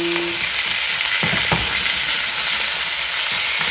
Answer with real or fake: real